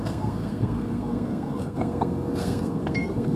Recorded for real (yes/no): no